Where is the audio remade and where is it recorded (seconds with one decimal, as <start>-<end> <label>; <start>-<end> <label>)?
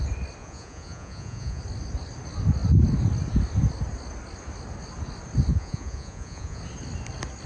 0.0-0.4 recorded; 0.4-1.6 remade; 1.6-5.5 recorded; 5.5-6.6 remade; 6.6-7.5 recorded